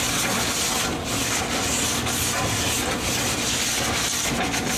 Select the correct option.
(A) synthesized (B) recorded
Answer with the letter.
B